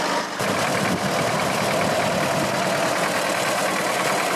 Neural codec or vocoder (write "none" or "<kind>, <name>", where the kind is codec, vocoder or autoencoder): none